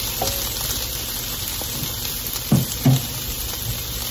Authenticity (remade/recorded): recorded